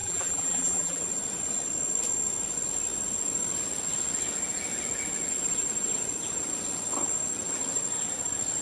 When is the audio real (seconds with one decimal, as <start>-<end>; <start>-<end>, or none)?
1.0-8.6